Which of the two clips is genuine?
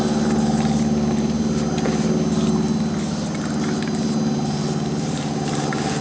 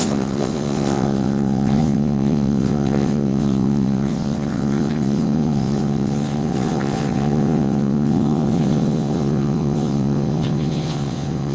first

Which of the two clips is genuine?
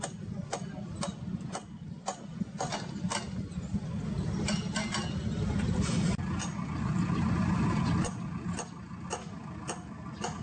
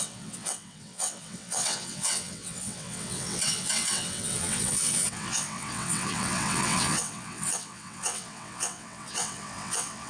first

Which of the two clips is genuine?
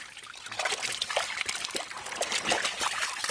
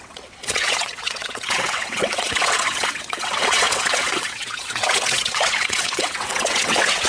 first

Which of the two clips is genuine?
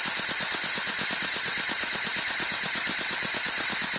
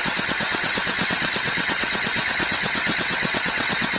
first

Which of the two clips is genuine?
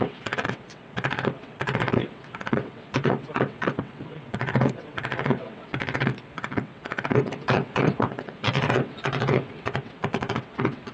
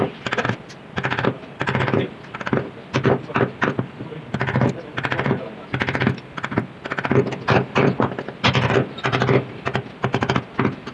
second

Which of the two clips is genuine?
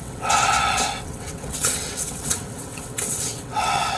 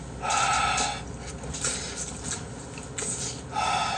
second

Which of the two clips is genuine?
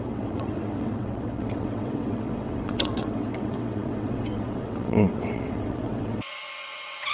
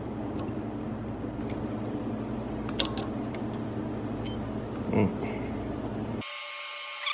second